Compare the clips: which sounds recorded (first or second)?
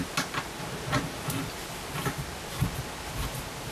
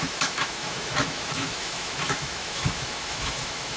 first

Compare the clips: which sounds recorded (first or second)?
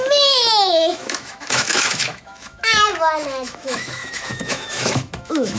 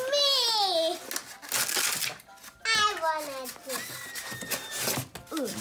second